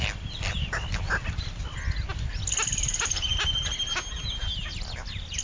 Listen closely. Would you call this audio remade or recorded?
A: recorded